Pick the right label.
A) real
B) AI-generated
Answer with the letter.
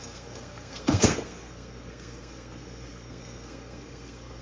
B